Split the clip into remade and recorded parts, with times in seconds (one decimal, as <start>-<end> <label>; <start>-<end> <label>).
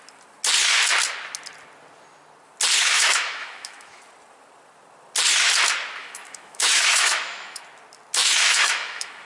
0.0-2.8 recorded; 2.8-4.0 remade; 4.0-6.0 recorded; 6.0-7.6 remade; 7.6-8.2 recorded; 8.2-9.3 remade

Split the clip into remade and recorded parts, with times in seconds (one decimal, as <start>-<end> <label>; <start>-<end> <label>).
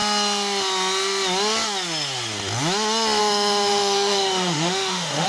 0.0-3.2 recorded; 3.2-5.3 remade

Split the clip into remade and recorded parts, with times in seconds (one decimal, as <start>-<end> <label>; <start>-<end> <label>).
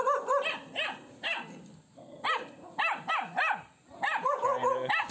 0.0-5.1 recorded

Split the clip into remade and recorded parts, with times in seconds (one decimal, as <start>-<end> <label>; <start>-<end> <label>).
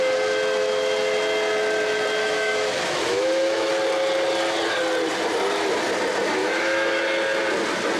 0.0-2.2 recorded; 2.2-3.7 remade; 3.7-6.4 recorded; 6.4-7.0 remade; 7.0-8.0 recorded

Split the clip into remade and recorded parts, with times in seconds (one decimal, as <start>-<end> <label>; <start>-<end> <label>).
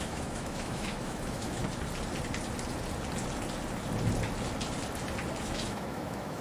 0.0-1.6 remade; 1.6-5.4 recorded; 5.4-6.4 remade